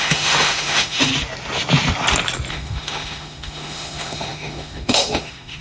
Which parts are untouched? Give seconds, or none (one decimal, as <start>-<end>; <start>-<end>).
1.1-2.5

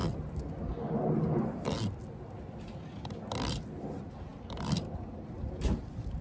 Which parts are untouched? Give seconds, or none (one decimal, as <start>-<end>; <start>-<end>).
0.0-6.2

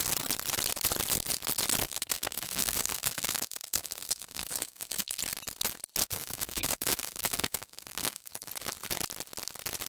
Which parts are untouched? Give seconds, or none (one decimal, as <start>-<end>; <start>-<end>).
0.0-1.8; 5.2-6.0; 8.5-9.9

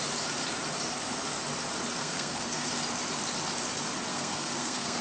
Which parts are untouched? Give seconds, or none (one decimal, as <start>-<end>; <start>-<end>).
0.0-2.0; 2.7-4.1

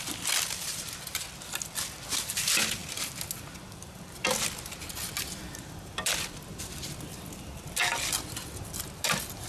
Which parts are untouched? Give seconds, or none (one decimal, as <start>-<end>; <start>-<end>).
0.0-9.5